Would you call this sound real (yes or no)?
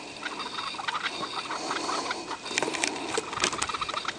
yes